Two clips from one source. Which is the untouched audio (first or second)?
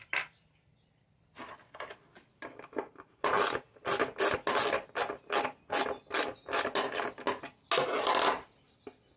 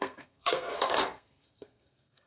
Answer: first